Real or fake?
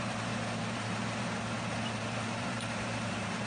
fake